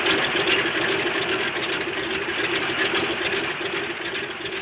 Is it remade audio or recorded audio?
recorded